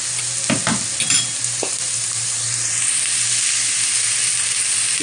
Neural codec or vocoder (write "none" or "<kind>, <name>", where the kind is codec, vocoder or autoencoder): none